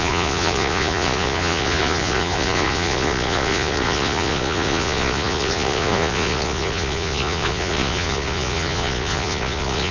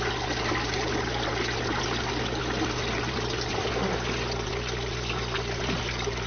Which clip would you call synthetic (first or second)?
first